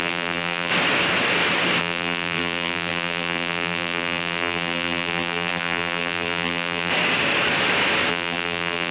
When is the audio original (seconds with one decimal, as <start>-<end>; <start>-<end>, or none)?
0.7-1.8; 6.9-8.1